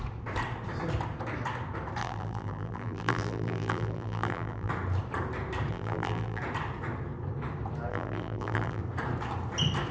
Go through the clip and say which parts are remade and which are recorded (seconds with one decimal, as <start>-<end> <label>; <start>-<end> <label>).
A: 0.0-2.0 recorded; 2.0-4.7 remade; 4.7-5.7 recorded; 5.7-6.4 remade; 6.4-7.9 recorded; 7.9-8.8 remade; 8.8-9.9 recorded